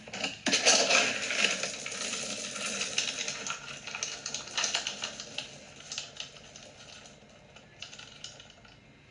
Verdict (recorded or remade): recorded